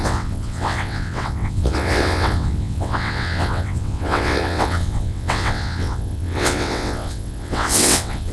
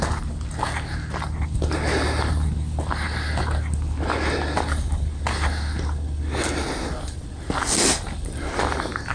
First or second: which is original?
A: second